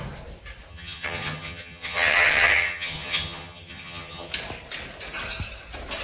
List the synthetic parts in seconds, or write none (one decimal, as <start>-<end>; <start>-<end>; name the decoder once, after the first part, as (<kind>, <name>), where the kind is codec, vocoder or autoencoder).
0.7-4.3 (vocoder, HiFi-GAN)